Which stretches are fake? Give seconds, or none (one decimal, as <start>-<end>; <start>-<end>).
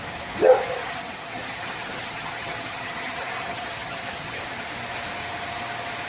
0.7-4.4